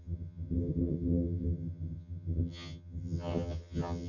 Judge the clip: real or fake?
fake